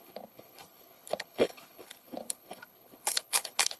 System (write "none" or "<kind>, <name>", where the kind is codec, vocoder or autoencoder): codec, HILCodec